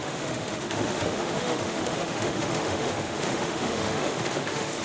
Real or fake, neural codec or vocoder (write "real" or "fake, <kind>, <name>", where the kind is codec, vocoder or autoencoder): fake, autoencoder, DAC-VAE